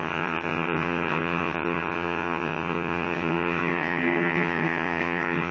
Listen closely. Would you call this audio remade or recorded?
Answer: remade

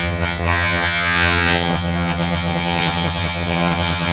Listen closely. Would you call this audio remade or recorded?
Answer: remade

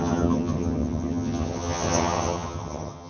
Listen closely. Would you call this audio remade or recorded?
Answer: remade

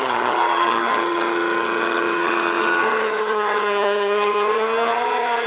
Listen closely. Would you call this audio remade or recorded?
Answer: remade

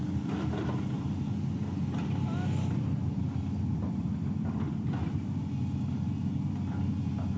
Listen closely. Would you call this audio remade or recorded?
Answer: recorded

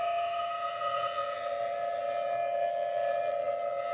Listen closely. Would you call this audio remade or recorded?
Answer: remade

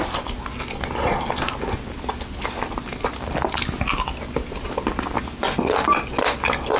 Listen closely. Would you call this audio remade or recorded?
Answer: recorded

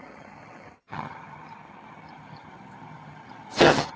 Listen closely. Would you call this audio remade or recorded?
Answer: remade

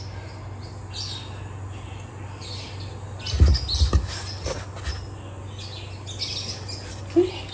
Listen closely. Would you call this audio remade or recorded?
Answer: recorded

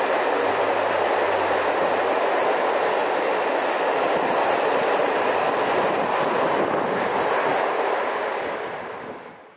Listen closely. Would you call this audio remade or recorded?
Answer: recorded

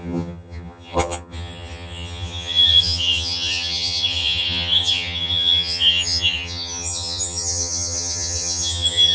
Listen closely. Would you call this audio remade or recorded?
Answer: remade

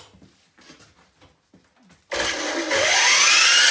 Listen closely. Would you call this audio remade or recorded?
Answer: recorded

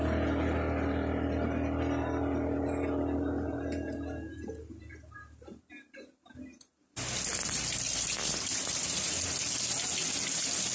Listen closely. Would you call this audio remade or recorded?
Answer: recorded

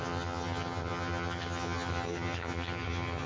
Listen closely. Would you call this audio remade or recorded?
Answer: remade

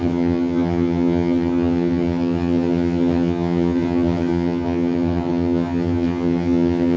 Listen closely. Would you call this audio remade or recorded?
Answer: remade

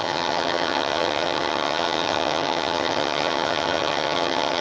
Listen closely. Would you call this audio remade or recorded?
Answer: remade